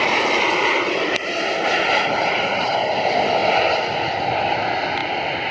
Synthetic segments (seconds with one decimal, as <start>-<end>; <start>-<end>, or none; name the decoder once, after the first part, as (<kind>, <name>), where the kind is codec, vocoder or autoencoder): none